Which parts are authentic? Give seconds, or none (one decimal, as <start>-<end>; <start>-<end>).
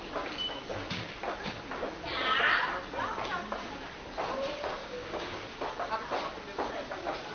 0.0-4.7; 5.4-7.3